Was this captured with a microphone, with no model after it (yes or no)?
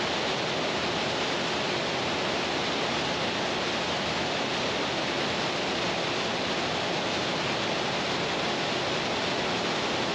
yes